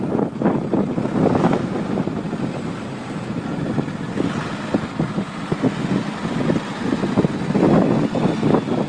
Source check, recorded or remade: recorded